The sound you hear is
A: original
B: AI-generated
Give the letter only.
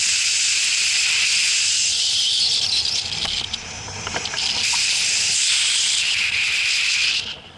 A